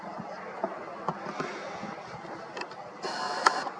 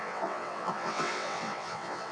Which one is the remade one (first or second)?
second